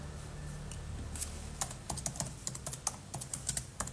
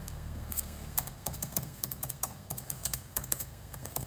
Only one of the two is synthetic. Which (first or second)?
second